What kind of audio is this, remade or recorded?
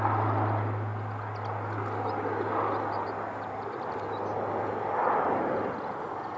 recorded